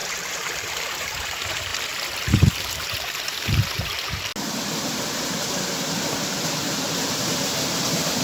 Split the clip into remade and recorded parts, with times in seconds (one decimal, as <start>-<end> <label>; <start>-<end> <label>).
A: 0.0-1.7 remade; 1.7-2.3 recorded; 2.3-4.3 remade; 4.3-7.1 recorded; 7.1-8.2 remade